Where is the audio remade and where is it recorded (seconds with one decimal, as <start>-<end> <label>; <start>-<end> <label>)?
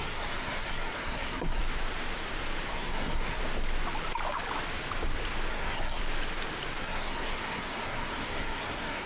0.0-1.6 remade; 1.6-2.7 recorded; 2.7-3.4 remade; 3.4-5.5 recorded; 5.5-6.0 remade; 6.0-6.8 recorded; 6.8-9.1 remade